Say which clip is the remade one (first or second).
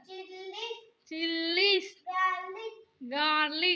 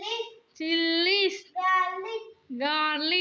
first